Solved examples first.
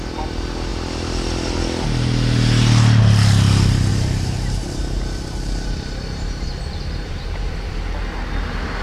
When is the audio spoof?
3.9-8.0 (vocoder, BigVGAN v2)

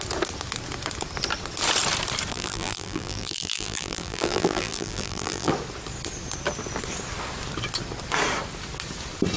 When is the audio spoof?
2.3-5.5 (vocoder, BigVGAN v2)

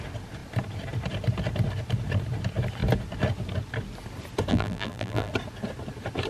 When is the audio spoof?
4.5-5.3 (vocoder, BigVGAN v2)